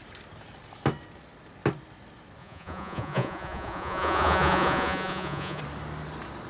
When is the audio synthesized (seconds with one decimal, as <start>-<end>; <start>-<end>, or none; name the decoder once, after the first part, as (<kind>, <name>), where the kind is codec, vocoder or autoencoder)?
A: 2.4-5.6 (vocoder, Vocos)